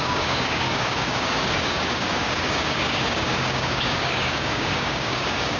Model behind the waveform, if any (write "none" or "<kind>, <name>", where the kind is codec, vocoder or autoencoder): codec, DAC